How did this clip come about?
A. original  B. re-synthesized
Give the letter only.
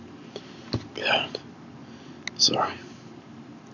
A